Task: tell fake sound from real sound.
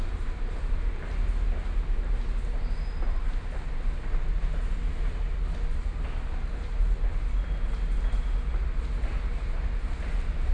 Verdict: real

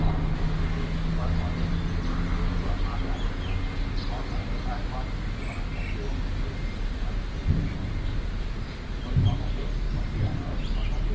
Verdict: real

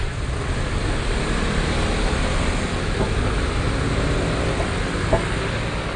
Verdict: real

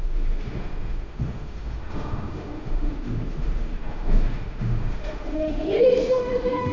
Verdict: fake